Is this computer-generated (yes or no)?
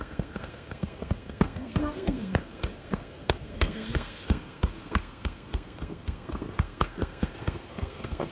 yes